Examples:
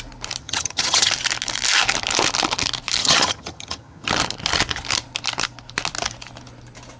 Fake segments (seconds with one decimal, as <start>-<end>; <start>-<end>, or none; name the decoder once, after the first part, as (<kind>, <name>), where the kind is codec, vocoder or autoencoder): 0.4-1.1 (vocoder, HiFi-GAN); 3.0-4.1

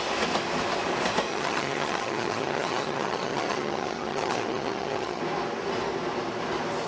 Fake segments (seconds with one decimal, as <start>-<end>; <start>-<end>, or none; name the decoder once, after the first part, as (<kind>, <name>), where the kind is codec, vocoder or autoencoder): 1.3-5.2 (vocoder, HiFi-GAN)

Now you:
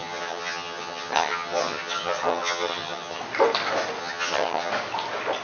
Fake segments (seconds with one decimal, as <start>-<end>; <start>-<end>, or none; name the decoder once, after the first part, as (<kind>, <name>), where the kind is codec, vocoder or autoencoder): 0.0-3.2 (vocoder, HiFi-GAN); 4.0-4.7

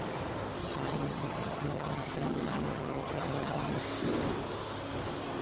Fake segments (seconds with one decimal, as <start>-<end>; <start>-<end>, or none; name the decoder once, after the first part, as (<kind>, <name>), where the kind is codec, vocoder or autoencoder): 0.6-3.8 (vocoder, HiFi-GAN)

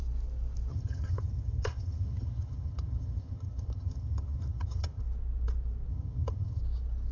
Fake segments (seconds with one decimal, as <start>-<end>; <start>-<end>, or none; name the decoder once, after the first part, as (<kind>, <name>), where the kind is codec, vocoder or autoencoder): 0.7-5.0 (vocoder, HiFi-GAN); 5.9-6.6

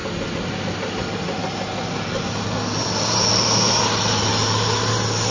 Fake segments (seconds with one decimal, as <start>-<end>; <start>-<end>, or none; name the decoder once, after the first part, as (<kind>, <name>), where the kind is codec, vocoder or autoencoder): none